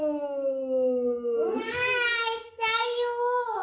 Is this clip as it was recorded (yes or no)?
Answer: no